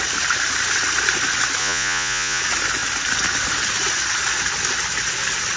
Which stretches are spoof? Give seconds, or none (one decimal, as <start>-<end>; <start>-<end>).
1.6-2.4

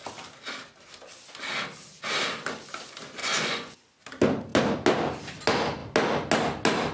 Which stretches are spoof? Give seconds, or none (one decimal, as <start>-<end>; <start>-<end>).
3.2-3.9